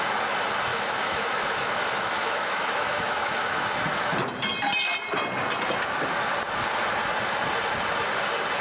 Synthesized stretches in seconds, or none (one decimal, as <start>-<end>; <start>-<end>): 0.7-3.7